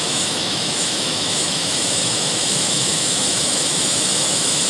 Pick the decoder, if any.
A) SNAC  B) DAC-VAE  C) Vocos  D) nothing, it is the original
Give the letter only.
B